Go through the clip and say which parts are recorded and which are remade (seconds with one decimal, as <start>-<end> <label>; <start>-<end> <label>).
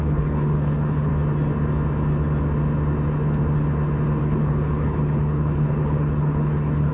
0.0-1.1 remade; 1.1-4.2 recorded; 4.2-6.9 remade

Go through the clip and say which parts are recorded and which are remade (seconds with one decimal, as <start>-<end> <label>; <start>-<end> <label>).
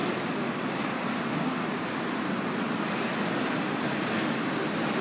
0.0-5.0 recorded